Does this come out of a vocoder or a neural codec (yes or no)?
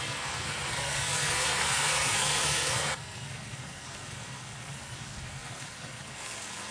yes